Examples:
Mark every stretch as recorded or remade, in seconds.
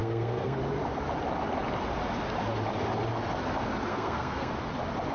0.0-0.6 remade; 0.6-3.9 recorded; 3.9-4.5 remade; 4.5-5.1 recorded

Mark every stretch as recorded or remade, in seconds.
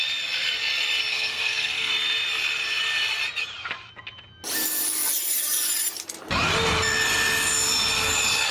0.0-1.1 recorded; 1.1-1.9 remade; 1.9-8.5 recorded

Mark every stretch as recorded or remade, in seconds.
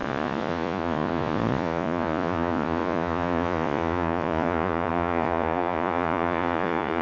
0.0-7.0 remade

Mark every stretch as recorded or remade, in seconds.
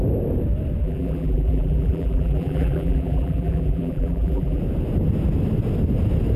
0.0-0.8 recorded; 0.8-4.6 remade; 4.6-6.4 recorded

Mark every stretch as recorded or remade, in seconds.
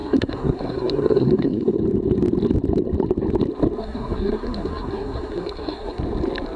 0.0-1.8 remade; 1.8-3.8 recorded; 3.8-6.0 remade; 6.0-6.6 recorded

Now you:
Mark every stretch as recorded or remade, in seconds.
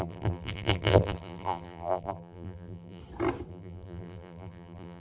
0.0-3.0 remade; 3.0-3.5 recorded; 3.5-5.0 remade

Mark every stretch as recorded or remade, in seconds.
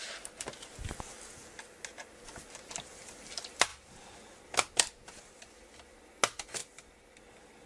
0.0-7.7 recorded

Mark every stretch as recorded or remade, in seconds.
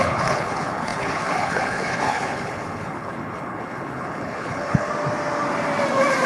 0.0-4.9 remade; 4.9-6.3 recorded